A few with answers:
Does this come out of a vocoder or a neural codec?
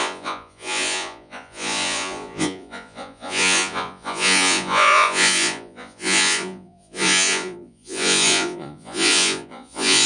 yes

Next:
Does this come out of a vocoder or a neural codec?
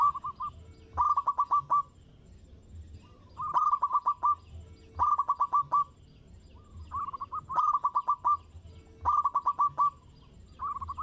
no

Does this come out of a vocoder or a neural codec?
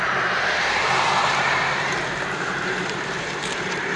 yes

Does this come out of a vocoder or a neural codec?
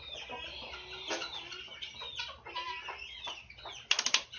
no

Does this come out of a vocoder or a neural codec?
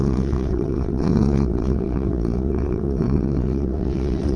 yes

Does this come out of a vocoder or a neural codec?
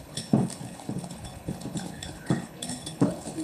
yes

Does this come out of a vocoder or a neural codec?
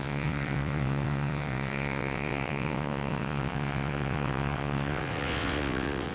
yes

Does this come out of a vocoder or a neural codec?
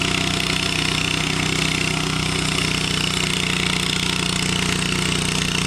no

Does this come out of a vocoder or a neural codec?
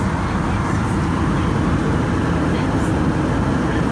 no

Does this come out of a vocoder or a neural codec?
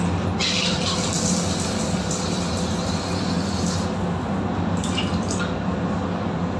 no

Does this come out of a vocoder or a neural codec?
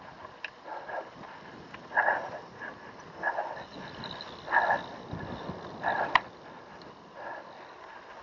no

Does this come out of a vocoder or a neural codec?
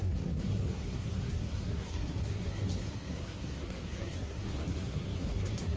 yes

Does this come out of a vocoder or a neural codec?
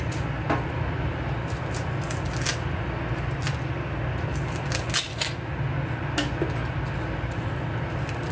no